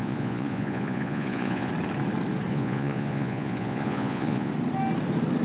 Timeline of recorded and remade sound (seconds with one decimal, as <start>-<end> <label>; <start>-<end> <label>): 0.0-1.7 remade; 1.7-2.5 recorded; 2.5-4.5 remade; 4.5-5.4 recorded